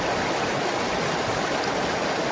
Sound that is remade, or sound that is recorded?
recorded